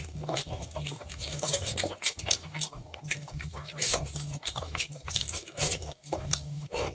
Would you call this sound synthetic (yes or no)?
yes